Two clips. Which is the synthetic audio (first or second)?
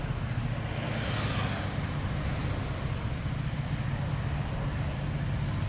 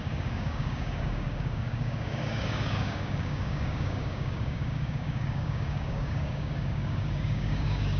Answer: second